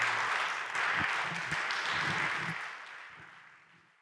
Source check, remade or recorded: recorded